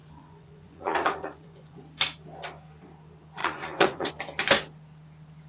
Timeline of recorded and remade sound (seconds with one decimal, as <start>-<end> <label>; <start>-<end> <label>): 0.0-1.8 remade; 1.8-3.4 recorded; 3.4-4.1 remade; 4.1-5.5 recorded